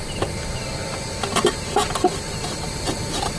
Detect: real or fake real